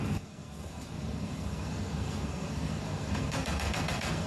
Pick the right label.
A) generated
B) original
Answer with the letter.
A